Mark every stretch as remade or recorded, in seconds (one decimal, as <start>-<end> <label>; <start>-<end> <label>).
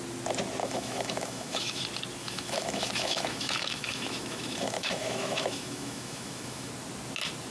0.0-0.6 recorded; 0.6-1.8 remade; 1.8-2.2 recorded; 2.2-6.7 remade; 6.7-7.5 recorded